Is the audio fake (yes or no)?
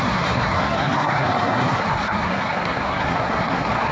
yes